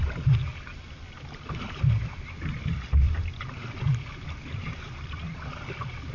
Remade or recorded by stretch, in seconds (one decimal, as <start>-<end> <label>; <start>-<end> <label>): 0.0-6.1 recorded